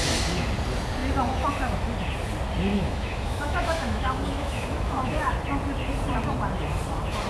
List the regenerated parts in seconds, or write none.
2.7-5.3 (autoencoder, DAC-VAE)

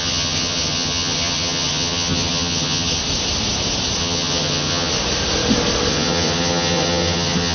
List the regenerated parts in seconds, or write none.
0.0-3.0 (vocoder, HiFi-GAN); 4.0-4.9; 5.9-7.5

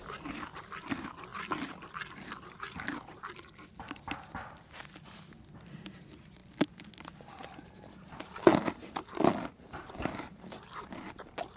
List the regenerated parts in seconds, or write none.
none